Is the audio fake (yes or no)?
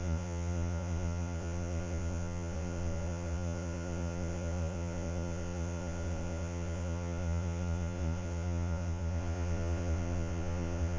yes